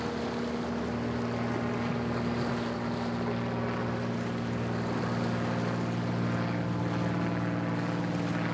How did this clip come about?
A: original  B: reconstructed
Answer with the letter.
A